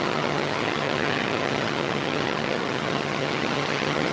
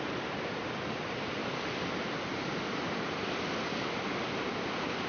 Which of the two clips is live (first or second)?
second